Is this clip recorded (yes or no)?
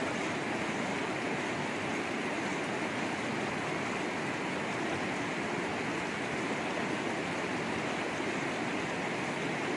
yes